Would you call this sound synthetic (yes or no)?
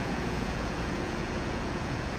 yes